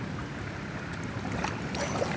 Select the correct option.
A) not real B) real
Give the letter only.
B